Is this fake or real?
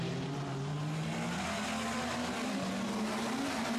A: real